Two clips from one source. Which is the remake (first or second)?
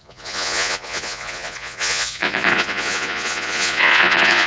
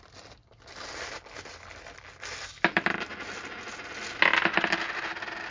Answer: first